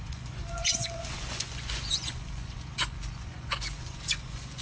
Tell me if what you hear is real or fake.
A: fake